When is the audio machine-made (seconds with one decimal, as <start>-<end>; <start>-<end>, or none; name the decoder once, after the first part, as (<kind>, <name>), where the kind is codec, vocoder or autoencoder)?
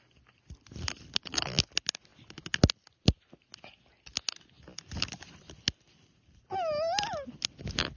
none